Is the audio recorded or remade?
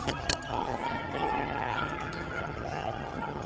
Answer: remade